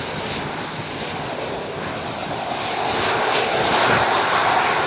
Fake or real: real